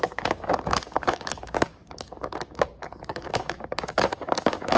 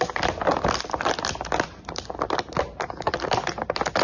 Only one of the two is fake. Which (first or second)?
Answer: first